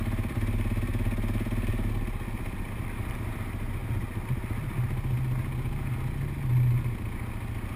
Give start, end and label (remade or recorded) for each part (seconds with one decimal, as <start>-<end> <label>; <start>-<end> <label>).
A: 0.0-0.9 remade; 0.9-1.7 recorded; 1.7-3.8 remade; 3.8-7.8 recorded